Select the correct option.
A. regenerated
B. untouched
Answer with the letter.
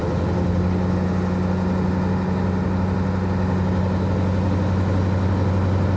B